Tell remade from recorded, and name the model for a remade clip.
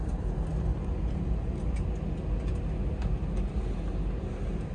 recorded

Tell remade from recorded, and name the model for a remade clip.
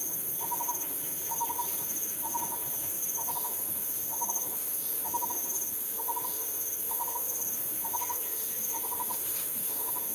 remade, autoencoder, DAC-VAE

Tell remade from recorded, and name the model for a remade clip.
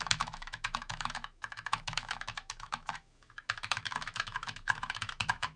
remade, autoencoder, DAC-VAE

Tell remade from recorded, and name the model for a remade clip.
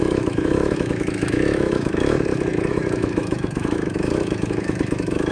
remade, autoencoder, DAC-VAE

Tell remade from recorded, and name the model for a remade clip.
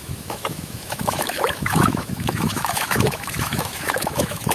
remade, autoencoder, DAC-VAE